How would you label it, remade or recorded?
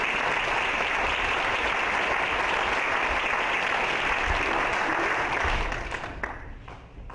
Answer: recorded